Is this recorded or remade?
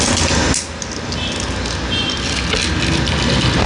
recorded